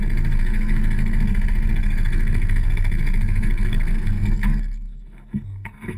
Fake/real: fake